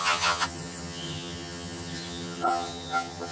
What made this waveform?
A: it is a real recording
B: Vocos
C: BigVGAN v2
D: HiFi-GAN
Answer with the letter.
D